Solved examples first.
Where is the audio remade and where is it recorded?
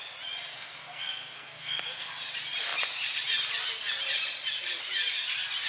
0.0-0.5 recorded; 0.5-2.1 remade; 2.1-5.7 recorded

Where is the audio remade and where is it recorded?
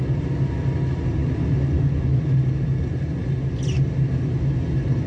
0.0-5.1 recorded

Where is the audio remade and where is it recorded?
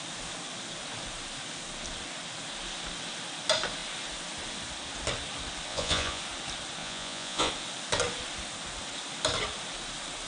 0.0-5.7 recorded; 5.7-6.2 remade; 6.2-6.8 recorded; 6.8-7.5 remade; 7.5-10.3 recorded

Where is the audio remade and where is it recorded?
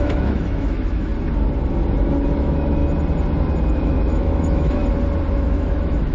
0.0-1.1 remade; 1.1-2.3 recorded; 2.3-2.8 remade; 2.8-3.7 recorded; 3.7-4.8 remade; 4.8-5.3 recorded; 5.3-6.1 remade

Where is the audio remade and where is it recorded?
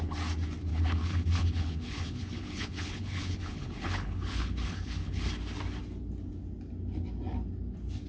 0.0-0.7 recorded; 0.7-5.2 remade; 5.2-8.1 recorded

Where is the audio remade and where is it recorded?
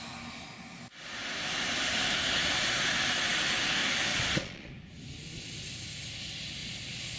0.0-4.1 recorded; 4.1-4.7 remade; 4.7-6.6 recorded; 6.6-7.2 remade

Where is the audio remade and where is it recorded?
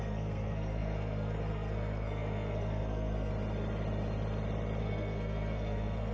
0.0-3.3 remade; 3.3-4.8 recorded; 4.8-6.1 remade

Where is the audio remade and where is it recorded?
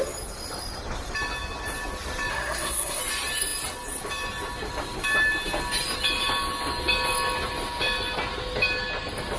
0.0-2.3 recorded; 2.3-3.0 remade; 3.0-9.4 recorded